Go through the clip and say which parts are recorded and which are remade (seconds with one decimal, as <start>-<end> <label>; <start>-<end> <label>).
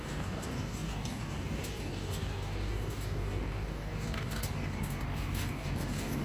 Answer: 0.0-6.2 remade